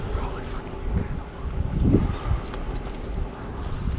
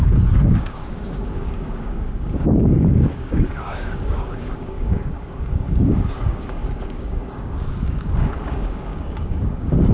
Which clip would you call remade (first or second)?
second